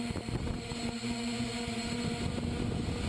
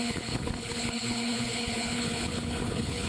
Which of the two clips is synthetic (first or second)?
second